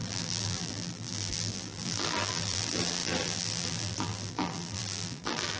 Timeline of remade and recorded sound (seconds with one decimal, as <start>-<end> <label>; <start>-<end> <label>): 0.0-5.6 remade